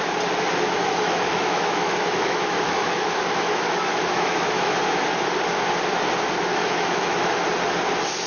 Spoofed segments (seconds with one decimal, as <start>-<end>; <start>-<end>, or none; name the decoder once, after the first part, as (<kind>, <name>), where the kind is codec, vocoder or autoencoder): 0.8-4.8 (autoencoder, DAC-VAE); 6.5-7.4